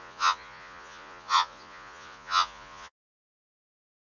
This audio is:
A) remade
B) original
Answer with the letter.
A